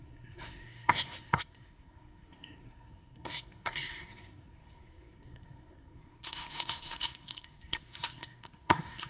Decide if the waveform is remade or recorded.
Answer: remade